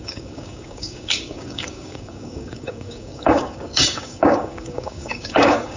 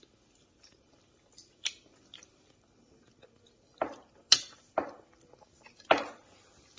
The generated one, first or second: first